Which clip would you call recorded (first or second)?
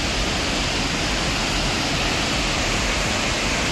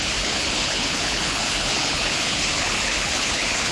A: first